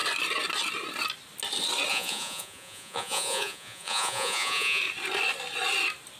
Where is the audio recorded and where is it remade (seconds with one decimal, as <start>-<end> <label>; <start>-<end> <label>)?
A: 0.0-1.9 recorded; 1.9-4.8 remade; 4.8-6.2 recorded